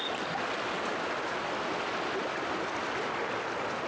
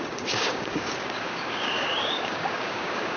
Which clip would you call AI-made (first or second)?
second